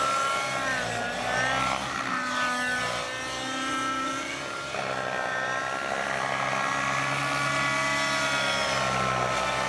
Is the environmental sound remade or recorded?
recorded